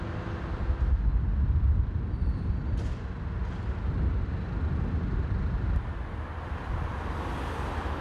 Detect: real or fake real